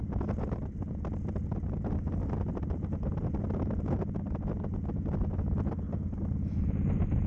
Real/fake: real